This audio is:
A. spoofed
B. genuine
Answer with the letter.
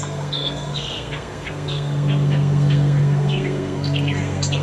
A